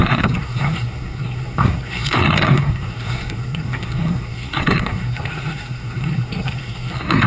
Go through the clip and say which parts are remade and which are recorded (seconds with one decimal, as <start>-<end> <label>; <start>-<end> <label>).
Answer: 0.0-7.3 remade